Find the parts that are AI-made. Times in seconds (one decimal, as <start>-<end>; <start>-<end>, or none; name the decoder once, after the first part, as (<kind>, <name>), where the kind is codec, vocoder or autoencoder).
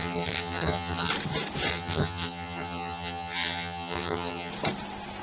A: 0.0-1.1 (vocoder, HiFi-GAN); 1.7-4.5